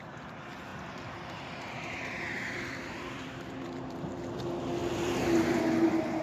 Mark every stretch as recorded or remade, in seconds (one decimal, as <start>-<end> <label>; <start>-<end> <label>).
0.0-0.7 recorded; 0.7-4.3 remade; 4.3-4.8 recorded; 4.8-5.6 remade; 5.6-6.2 recorded